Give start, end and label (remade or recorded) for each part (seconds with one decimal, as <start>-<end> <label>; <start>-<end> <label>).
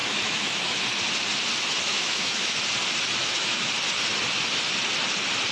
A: 0.0-0.8 remade; 0.8-1.9 recorded; 1.9-2.5 remade; 2.5-3.2 recorded; 3.2-3.7 remade; 3.7-5.5 recorded